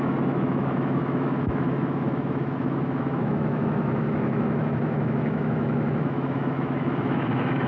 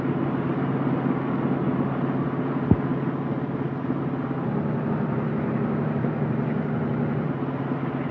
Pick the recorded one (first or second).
second